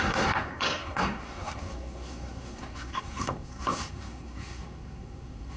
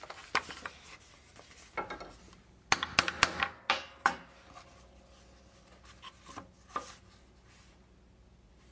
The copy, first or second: first